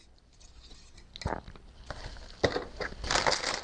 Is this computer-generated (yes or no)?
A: no